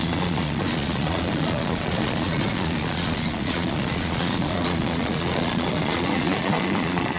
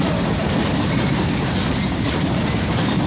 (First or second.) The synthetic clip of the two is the first